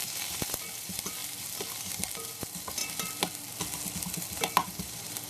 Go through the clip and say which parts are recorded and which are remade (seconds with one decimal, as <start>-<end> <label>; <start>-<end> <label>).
0.0-1.2 remade; 1.2-1.8 recorded; 1.8-2.8 remade; 2.8-4.4 recorded; 4.4-5.3 remade